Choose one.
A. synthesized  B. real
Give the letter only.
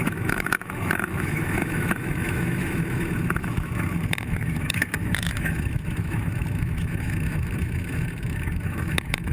A